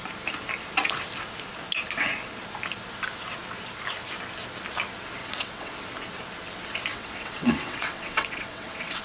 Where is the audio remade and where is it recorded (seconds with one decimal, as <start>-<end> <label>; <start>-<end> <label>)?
0.0-5.2 recorded; 5.2-5.7 remade; 5.7-6.9 recorded; 6.9-9.0 remade